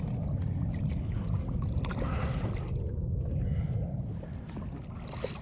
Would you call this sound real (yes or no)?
yes